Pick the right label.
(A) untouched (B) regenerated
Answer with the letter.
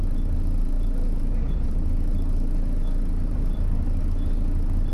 B